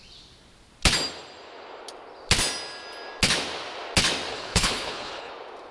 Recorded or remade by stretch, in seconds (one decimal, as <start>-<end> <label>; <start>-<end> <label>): 0.0-4.3 recorded; 4.3-5.3 remade; 5.3-5.7 recorded